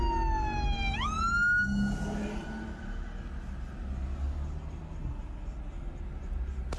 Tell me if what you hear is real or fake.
real